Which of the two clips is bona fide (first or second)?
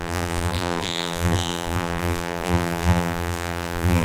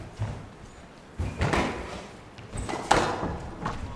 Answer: second